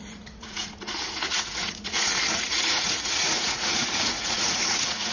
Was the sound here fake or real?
fake